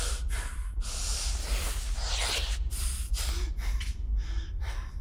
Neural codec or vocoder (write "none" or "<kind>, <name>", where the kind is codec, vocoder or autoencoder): none